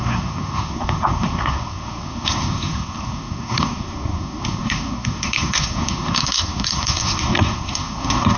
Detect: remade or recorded remade